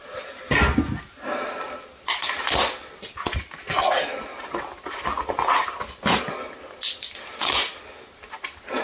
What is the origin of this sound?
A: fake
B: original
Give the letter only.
B